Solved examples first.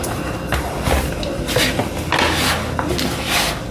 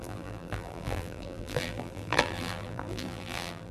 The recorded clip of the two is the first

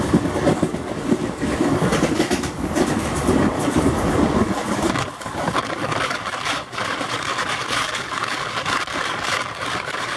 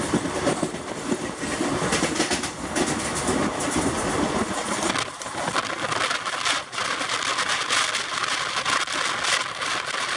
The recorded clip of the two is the second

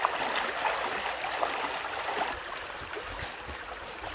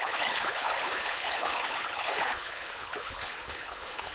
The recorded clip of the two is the first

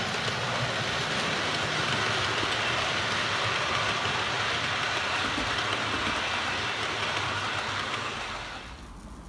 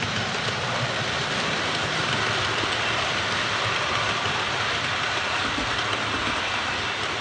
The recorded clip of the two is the first